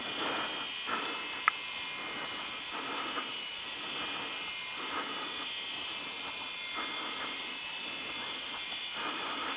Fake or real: real